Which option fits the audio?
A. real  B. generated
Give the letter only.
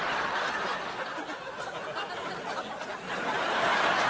A